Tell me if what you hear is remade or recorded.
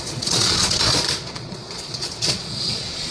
remade